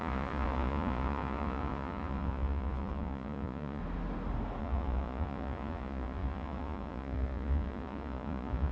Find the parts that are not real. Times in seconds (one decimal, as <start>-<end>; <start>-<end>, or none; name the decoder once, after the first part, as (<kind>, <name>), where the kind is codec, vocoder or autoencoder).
0.0-3.8 (vocoder, Vocos); 4.6-8.7